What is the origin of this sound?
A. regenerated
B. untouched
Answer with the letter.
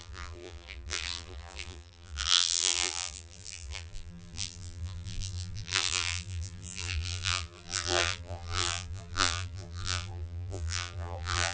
A